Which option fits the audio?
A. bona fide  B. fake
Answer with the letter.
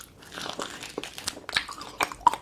A